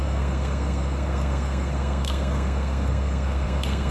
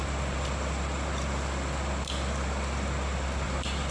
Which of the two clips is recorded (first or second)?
second